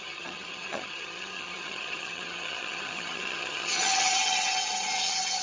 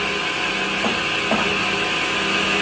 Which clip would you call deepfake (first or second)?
first